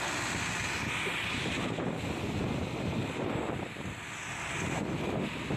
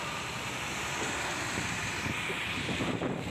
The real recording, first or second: first